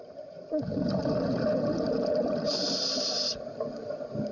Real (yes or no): yes